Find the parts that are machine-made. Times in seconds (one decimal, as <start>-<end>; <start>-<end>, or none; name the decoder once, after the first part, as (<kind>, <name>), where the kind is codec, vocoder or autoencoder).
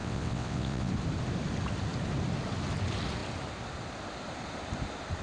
0.0-0.9 (vocoder, WaveNeXt)